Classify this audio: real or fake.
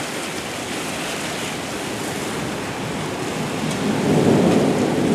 real